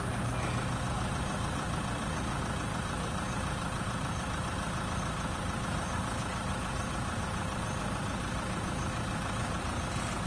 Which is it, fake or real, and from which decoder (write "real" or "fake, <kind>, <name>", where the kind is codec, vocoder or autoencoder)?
real